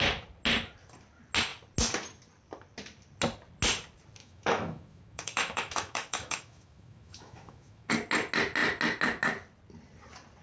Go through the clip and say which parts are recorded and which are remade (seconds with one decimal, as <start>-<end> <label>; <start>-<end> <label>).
0.0-4.2 recorded; 4.2-7.9 remade; 7.9-10.4 recorded